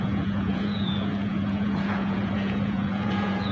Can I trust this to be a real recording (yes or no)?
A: no